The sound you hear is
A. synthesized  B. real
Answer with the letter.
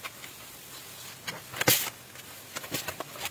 B